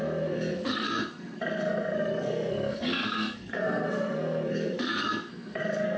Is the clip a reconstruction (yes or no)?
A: yes